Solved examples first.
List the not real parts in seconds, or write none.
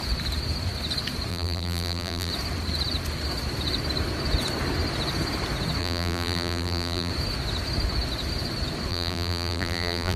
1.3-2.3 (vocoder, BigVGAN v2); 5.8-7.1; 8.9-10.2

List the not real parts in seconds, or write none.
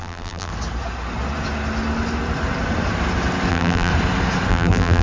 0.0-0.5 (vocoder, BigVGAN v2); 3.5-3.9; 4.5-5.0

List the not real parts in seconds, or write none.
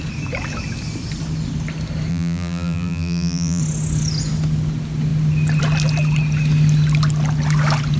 2.1-3.6 (vocoder, BigVGAN v2)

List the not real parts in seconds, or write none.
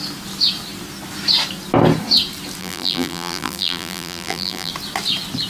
2.6-4.7 (vocoder, BigVGAN v2)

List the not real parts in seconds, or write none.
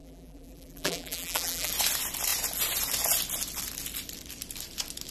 0.0-1.7 (vocoder, BigVGAN v2)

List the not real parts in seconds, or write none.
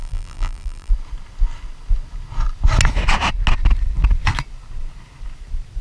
0.0-0.9 (vocoder, BigVGAN v2)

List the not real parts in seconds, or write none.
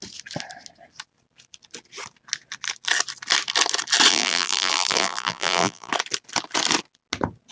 4.1-5.9 (vocoder, BigVGAN v2)